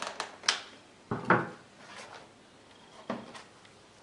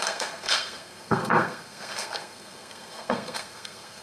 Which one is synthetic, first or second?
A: second